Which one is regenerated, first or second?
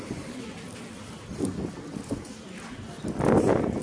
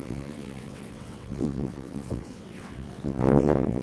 second